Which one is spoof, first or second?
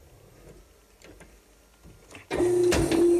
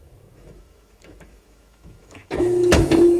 second